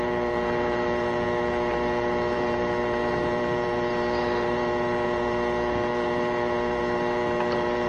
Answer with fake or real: fake